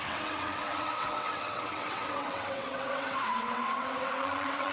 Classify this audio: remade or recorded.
remade